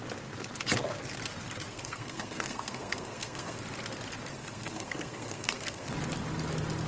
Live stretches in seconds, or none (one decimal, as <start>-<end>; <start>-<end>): 0.0-1.7; 3.6-4.3; 5.9-6.9